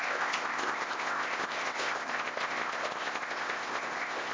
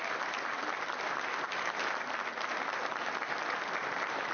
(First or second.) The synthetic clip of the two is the first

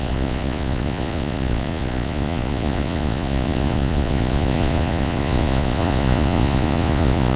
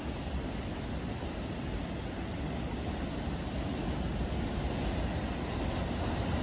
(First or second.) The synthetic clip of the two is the first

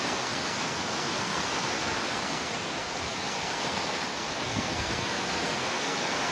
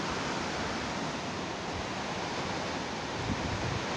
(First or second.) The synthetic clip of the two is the first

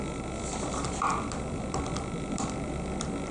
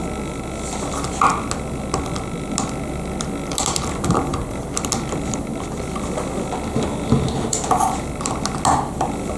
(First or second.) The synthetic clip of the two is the first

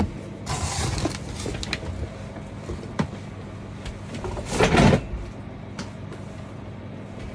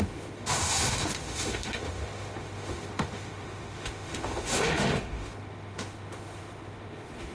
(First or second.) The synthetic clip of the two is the second